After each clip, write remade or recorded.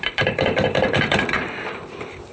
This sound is remade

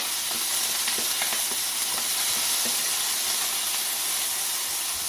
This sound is recorded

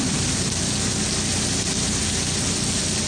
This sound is recorded